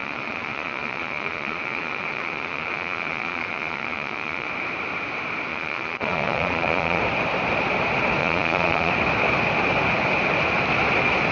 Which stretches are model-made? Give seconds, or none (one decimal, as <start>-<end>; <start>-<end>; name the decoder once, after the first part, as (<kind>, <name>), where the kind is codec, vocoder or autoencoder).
0.0-4.5 (vocoder, Vocos); 5.5-7.0; 8.2-8.9